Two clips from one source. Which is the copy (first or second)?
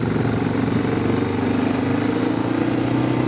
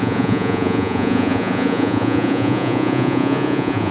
second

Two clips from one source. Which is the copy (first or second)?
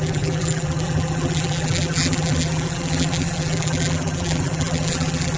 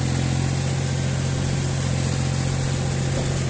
first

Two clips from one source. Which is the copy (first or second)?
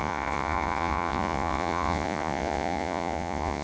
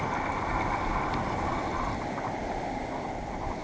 first